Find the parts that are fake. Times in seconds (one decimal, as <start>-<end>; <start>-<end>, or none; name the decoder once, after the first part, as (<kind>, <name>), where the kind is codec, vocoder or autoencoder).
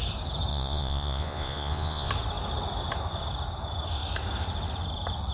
0.5-2.1 (vocoder, Vocos)